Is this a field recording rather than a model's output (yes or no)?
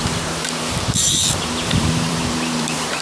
no